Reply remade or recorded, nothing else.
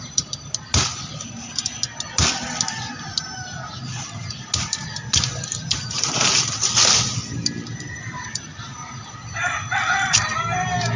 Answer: recorded